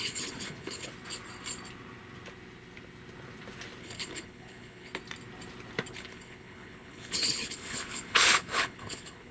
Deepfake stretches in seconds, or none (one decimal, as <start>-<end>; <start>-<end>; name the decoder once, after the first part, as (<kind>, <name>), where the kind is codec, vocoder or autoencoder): 0.0-0.9 (codec, HILCodec); 3.8-4.9; 5.9-9.3